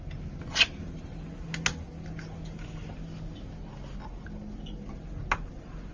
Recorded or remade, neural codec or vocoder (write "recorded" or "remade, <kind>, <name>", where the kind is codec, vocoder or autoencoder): recorded